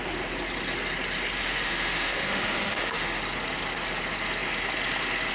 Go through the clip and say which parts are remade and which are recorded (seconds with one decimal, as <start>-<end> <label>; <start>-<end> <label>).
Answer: 0.0-1.4 recorded; 1.4-3.2 remade; 3.2-5.3 recorded